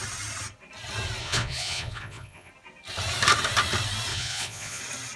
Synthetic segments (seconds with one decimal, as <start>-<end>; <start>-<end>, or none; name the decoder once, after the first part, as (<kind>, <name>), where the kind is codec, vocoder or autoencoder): 1.2-2.5 (vocoder, Vocos); 4.1-4.8